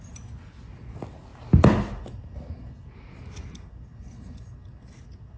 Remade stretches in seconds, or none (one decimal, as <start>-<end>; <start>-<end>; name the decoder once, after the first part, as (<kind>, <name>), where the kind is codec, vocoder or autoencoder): none